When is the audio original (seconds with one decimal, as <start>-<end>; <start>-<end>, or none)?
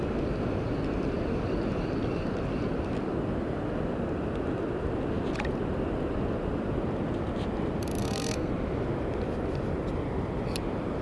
0.0-8.0; 8.5-11.0